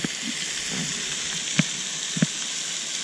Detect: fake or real real